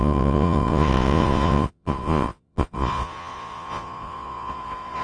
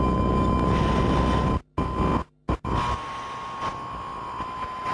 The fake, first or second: first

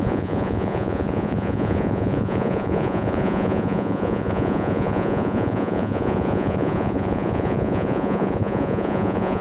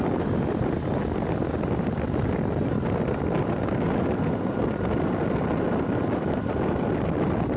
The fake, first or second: first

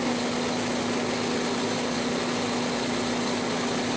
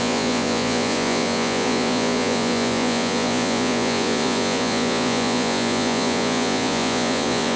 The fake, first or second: second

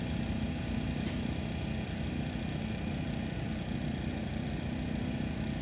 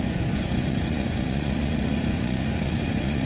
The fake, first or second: second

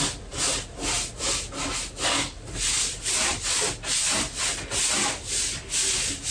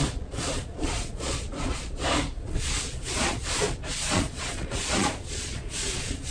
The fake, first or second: second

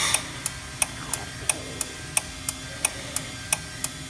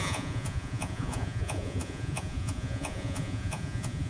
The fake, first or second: second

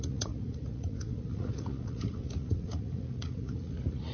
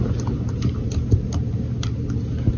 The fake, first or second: first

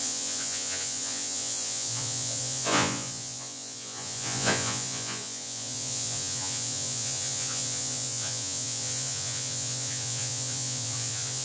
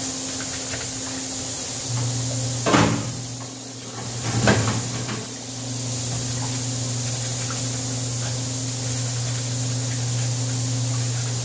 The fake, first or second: first